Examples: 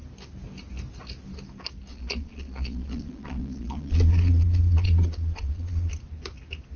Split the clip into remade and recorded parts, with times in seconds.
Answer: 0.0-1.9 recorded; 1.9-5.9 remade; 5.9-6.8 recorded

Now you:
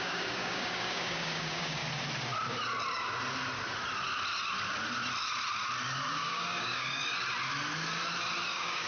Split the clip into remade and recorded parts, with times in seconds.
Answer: 0.0-1.8 remade; 1.8-6.1 recorded; 6.1-7.0 remade; 7.0-8.5 recorded; 8.5-8.9 remade

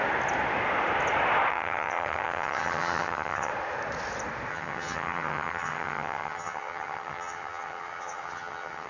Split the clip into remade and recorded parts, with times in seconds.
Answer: 0.0-1.5 recorded; 1.5-3.5 remade; 3.5-4.5 recorded; 4.5-8.9 remade